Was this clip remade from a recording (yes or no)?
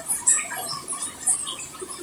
yes